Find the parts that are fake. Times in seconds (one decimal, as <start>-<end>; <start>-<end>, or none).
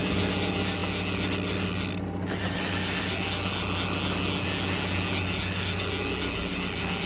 none